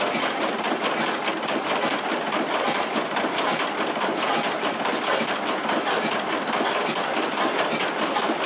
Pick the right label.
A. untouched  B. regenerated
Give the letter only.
A